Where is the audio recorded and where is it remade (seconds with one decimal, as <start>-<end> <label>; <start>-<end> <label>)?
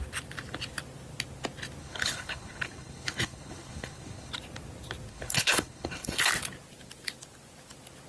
0.0-1.8 recorded; 1.8-4.3 remade; 4.3-5.1 recorded; 5.1-6.2 remade; 6.2-8.1 recorded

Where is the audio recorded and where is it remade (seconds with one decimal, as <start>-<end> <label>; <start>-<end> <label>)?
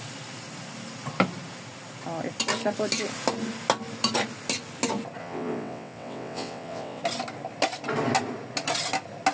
0.0-5.2 recorded; 5.2-7.0 remade; 7.0-9.3 recorded